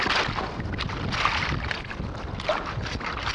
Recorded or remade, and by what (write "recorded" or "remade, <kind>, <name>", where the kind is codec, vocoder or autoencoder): recorded